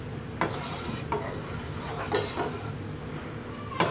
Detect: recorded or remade recorded